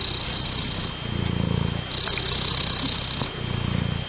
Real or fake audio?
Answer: real